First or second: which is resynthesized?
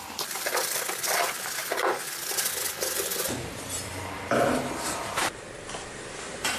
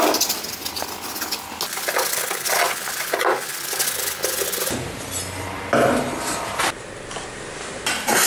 first